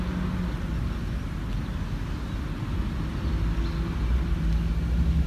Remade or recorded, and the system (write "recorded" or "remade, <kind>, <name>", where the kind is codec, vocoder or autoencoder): recorded